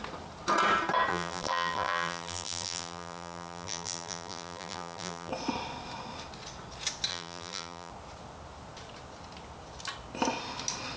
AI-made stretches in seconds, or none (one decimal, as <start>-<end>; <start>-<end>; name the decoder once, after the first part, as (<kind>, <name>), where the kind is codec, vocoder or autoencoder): 1.1-5.3 (vocoder, BigVGAN v2); 7.1-7.9

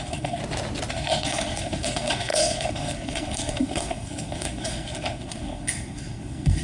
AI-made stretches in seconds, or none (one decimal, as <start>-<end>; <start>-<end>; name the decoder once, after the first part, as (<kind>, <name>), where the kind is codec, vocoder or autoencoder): 0.0-0.4 (codec, SNAC); 0.9-6.6

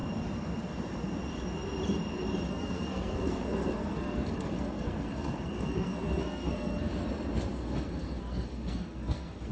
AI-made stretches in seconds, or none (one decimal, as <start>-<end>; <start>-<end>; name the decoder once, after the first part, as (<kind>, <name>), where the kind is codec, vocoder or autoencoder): 2.5-6.9 (codec, SNAC); 7.5-9.5

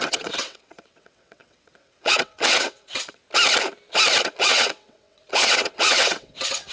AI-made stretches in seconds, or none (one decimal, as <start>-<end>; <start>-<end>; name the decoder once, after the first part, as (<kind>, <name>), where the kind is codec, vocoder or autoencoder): 0.0-3.2 (vocoder, WaveNeXt); 4.2-6.7

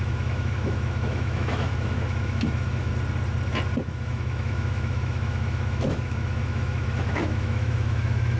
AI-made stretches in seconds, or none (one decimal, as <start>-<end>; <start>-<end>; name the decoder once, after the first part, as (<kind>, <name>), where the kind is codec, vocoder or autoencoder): 0.0-2.9 (autoencoder, DAC-VAE); 3.8-8.4

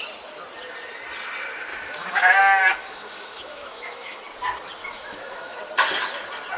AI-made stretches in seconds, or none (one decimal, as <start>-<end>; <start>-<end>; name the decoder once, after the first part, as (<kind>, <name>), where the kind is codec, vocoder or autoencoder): 1.7-2.4 (autoencoder, DAC-VAE); 2.8-4.2; 4.8-5.6